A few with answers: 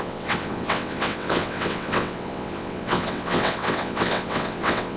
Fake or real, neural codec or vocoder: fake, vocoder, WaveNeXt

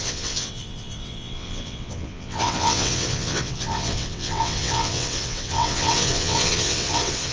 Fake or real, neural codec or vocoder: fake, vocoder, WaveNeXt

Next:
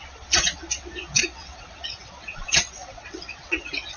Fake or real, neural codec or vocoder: fake, vocoder, WaveNeXt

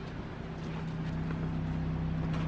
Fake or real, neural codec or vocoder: real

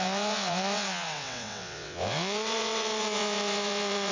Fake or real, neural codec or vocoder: fake, vocoder, WaveNeXt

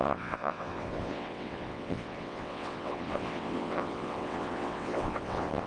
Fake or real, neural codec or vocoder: fake, vocoder, WaveNeXt